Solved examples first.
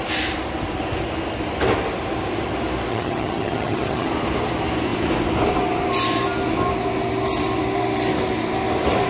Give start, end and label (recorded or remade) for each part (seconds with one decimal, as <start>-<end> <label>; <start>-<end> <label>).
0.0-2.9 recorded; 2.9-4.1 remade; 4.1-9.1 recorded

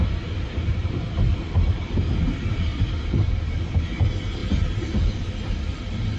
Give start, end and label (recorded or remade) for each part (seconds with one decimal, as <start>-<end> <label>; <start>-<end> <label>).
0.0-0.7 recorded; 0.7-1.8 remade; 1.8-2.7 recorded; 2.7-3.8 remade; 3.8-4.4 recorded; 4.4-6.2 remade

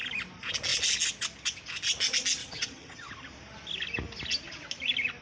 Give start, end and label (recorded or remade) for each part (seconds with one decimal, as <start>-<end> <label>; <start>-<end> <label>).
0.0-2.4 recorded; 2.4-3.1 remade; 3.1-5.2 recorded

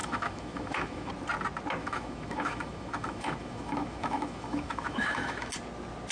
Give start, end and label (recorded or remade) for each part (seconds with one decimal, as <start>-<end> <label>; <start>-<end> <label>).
0.0-1.1 remade; 1.1-1.8 recorded; 1.8-5.5 remade; 5.5-6.1 recorded

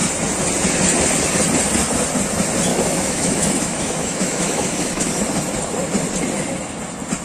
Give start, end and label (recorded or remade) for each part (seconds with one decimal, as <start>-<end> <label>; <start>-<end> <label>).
0.0-2.7 recorded; 2.7-5.1 remade; 5.1-7.2 recorded

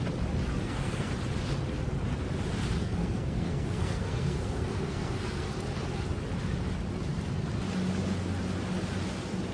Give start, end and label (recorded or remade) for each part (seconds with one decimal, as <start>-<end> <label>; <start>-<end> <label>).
0.0-0.6 recorded; 0.6-1.1 remade; 1.1-2.8 recorded; 2.8-5.5 remade; 5.5-9.5 recorded